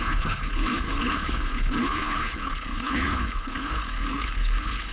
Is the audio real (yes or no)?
no